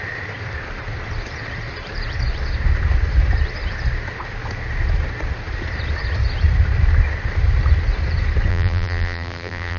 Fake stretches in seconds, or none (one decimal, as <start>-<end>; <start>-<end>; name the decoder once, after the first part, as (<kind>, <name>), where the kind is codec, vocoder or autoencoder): 8.5-9.8 (vocoder, BigVGAN v2)